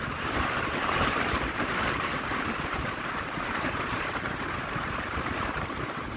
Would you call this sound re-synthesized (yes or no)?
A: yes